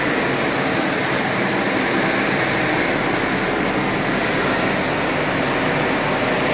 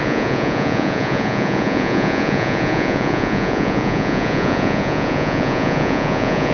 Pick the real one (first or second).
first